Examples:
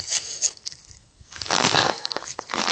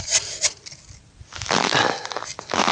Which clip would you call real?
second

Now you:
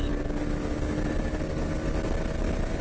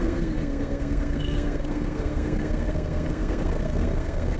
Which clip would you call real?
first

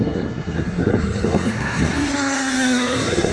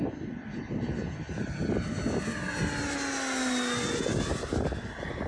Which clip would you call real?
second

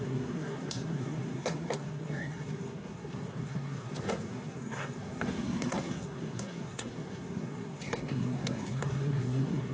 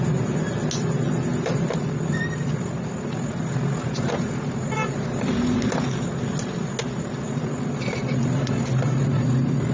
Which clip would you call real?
second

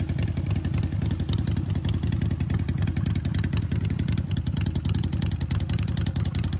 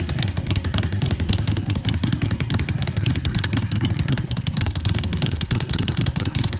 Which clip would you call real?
first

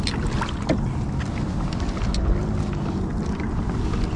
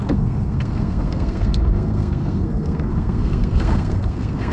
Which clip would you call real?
first